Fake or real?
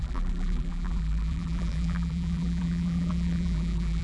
fake